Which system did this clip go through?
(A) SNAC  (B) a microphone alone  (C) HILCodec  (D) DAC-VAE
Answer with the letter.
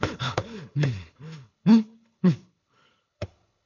C